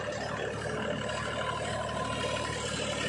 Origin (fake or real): real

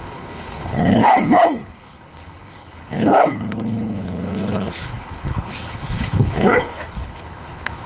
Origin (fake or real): fake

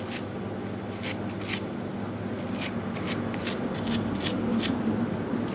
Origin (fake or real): real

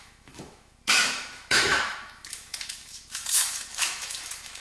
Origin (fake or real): fake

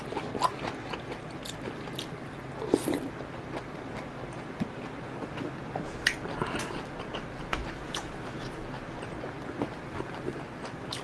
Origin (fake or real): real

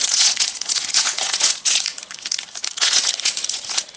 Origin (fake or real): fake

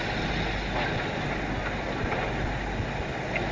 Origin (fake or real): real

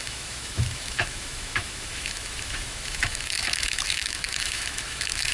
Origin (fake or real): fake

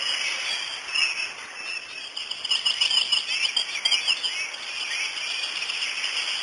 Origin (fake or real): real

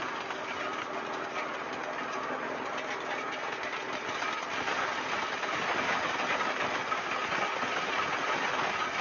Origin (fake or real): real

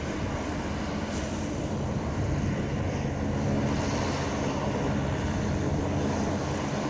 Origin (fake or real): real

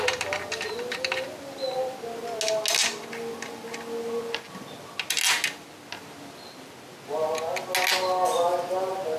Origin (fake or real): real